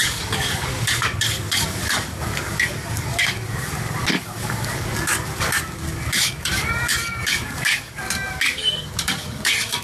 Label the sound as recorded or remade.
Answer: remade